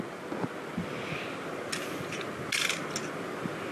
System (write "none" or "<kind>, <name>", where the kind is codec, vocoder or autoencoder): none